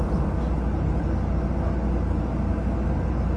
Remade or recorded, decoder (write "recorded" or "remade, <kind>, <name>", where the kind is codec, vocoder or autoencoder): recorded